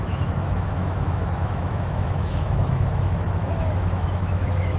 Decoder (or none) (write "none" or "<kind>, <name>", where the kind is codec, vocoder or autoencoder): autoencoder, DAC-VAE